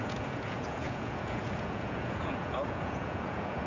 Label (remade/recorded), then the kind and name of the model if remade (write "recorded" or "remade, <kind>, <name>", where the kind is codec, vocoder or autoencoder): remade, vocoder, Vocos